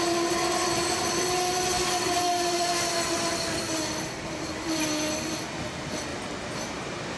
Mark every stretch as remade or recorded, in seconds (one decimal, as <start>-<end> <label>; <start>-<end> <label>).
0.0-7.2 recorded